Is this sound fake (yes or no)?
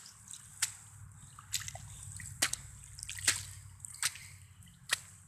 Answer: no